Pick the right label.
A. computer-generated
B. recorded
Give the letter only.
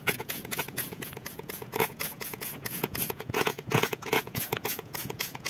A